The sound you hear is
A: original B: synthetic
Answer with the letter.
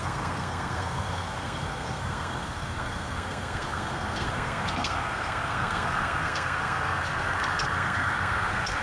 B